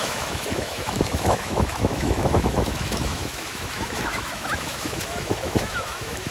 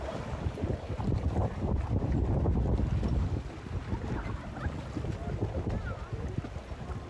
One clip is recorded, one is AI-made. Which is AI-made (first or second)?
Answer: first